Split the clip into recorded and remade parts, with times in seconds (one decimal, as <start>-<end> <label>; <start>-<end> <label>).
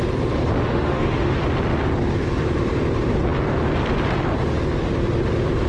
0.0-0.7 recorded; 0.7-1.4 remade; 1.4-5.7 recorded